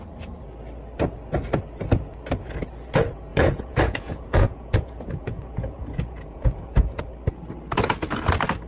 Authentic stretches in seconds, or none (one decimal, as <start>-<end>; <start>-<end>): 0.0-3.3; 7.0-8.7